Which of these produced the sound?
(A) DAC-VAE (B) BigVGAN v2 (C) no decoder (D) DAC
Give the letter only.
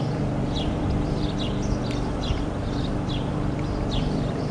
B